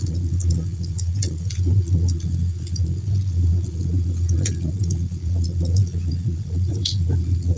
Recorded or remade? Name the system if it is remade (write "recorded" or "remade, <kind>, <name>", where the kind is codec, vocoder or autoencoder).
remade, vocoder, Vocos